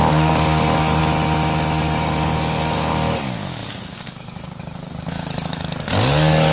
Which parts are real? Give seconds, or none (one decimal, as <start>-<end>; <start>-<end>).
1.0-1.8